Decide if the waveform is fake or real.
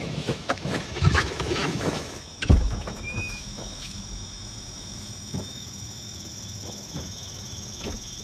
fake